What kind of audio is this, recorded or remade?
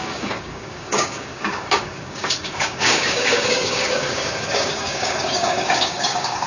remade